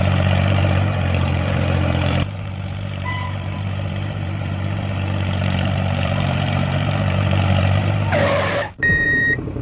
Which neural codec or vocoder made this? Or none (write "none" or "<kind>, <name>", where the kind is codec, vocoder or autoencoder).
vocoder, BigVGAN v2